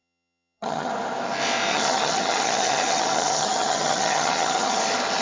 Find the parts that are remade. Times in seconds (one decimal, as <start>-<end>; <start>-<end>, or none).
0.0-0.9; 1.7-4.8